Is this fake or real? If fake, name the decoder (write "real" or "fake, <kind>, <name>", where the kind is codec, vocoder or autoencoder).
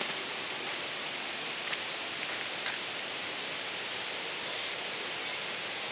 real